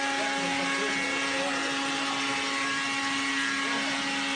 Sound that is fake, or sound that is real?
real